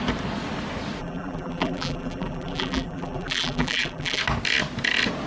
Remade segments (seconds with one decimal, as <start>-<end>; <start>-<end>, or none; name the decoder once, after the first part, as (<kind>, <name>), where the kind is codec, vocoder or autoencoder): 1.0-4.2 (vocoder, BigVGAN v2)